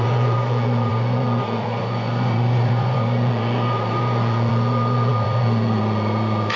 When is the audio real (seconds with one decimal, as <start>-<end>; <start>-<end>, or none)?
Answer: none